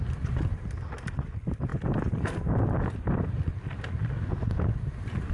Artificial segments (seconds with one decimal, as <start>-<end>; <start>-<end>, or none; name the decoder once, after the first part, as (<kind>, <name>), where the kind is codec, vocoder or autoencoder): none